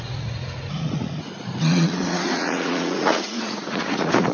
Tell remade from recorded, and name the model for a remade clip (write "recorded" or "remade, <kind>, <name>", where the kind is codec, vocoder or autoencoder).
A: remade, vocoder, Vocos